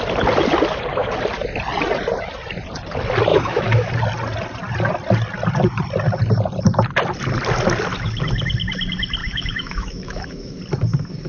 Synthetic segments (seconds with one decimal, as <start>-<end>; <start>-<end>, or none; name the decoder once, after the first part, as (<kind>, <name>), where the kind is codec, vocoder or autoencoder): 3.3-3.9 (autoencoder, DAC-VAE); 9.2-10.6